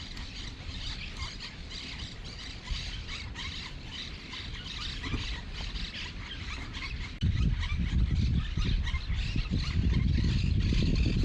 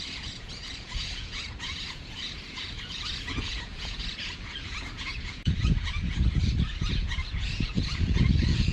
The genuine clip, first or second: first